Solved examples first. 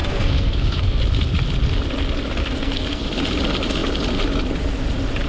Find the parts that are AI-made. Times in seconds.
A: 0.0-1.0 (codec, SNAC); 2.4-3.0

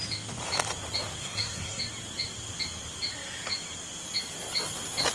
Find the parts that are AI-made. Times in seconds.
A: 1.2-1.8 (codec, SNAC)

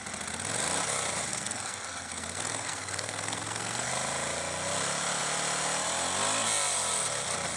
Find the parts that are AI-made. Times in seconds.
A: 1.3-3.9 (codec, SNAC)

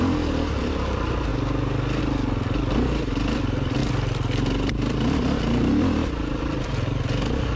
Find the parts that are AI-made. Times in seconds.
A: none

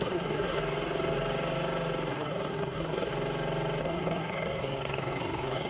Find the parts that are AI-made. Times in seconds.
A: 0.0-0.6 (codec, SNAC); 2.1-3.1; 3.8-5.7

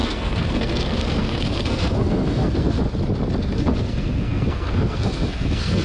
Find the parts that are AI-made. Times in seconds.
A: 0.0-2.8 (codec, SNAC); 3.4-5.8

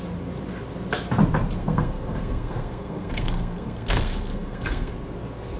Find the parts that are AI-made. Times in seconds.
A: 1.6-4.9 (codec, SNAC)